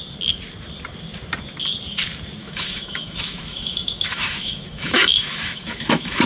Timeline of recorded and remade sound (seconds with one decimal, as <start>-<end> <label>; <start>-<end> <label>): 0.0-2.4 recorded; 2.4-6.3 remade